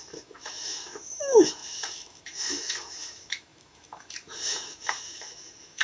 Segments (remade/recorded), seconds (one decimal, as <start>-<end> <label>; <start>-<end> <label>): 0.0-5.8 remade